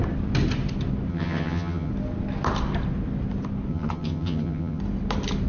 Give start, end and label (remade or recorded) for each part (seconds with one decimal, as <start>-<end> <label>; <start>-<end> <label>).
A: 0.0-1.1 recorded; 1.1-1.9 remade; 1.9-3.7 recorded; 3.7-4.8 remade; 4.8-5.5 recorded